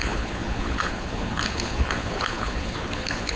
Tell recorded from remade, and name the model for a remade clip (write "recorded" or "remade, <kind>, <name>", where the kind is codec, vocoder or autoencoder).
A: remade, codec, HILCodec